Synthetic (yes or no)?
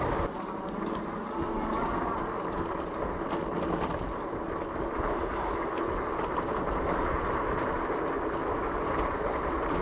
no